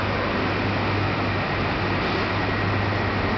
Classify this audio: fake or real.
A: real